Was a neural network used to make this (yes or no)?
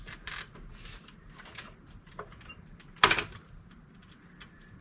no